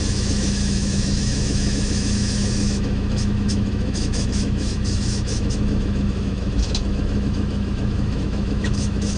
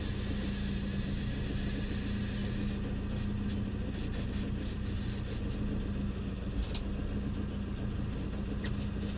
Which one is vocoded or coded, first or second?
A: first